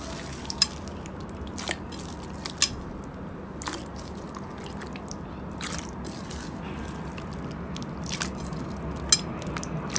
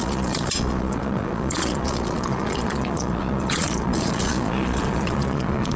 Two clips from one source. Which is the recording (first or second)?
first